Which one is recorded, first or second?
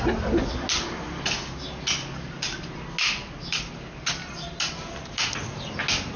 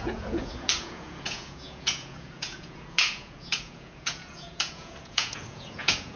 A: first